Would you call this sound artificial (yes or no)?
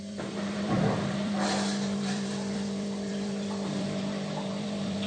yes